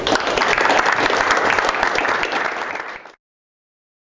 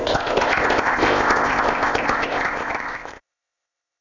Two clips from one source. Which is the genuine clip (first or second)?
first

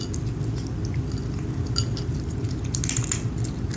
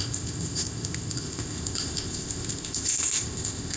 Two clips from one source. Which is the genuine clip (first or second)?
first